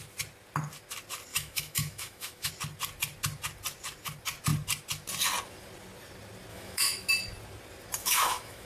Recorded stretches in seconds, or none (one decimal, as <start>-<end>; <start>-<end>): 0.0-1.3; 2.5-6.5; 7.1-8.0